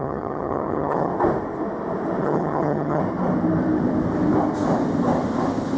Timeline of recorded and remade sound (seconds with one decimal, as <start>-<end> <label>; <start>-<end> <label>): 0.0-1.1 remade; 1.1-2.2 recorded; 2.2-3.0 remade; 3.0-5.8 recorded